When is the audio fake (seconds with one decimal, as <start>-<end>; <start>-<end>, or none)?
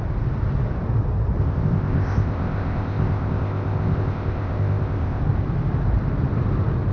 1.4-5.2